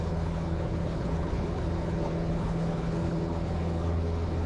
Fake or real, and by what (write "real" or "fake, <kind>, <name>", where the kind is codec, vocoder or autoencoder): fake, codec, HILCodec